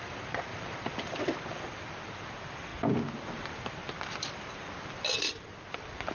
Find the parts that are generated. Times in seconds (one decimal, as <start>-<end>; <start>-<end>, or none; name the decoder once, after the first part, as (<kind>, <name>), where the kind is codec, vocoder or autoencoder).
0.5-1.2 (vocoder, BigVGAN v2)